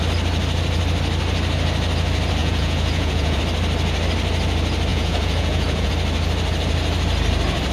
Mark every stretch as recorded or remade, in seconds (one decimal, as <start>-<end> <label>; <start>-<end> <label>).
0.0-2.4 recorded; 2.4-3.4 remade; 3.4-4.9 recorded; 4.9-5.9 remade; 5.9-7.7 recorded